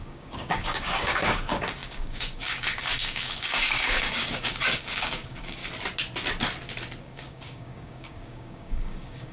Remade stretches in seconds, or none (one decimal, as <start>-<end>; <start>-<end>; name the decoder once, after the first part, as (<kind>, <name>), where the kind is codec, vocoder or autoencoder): 0.0-5.6 (codec, DAC); 7.0-9.3